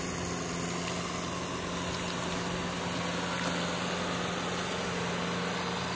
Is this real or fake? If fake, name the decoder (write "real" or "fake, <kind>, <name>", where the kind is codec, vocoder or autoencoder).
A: real